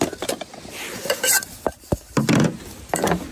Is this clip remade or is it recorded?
recorded